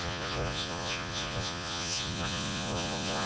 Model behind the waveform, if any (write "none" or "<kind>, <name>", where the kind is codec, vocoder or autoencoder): vocoder, Vocos